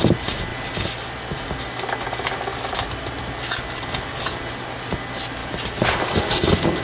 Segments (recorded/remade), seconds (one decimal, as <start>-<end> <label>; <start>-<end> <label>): 0.0-6.8 recorded